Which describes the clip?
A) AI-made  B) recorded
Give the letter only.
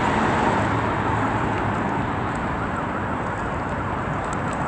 B